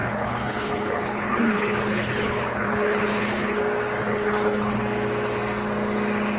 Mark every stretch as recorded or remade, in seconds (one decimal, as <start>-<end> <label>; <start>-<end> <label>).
0.0-3.6 remade; 3.6-4.0 recorded; 4.0-4.8 remade; 4.8-6.4 recorded

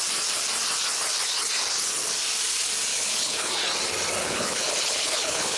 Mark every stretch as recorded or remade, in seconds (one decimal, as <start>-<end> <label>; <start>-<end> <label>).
0.0-2.9 recorded; 2.9-3.5 remade; 3.5-4.2 recorded; 4.2-5.6 remade

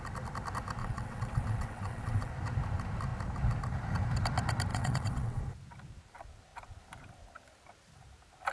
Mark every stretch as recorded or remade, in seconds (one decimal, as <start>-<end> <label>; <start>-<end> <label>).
0.0-0.8 recorded; 0.8-2.3 remade; 2.3-4.7 recorded; 4.7-5.4 remade; 5.4-8.5 recorded

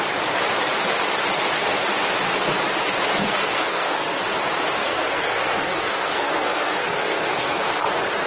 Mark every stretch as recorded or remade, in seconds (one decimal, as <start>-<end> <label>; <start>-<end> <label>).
0.0-3.2 recorded; 3.2-4.2 remade; 4.2-4.8 recorded; 4.8-7.7 remade; 7.7-8.3 recorded

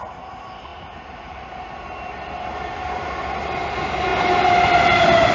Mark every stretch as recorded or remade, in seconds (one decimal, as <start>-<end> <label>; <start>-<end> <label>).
0.0-5.3 recorded

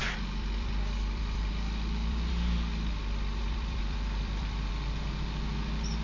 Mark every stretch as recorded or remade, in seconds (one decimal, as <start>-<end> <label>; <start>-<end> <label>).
0.0-2.3 remade; 2.3-3.4 recorded; 3.4-4.7 remade; 4.7-6.0 recorded

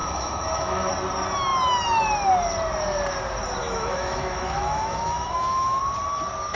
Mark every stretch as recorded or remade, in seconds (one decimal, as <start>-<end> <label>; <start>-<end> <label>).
0.0-0.9 remade; 0.9-3.6 recorded; 3.6-5.8 remade; 5.8-6.6 recorded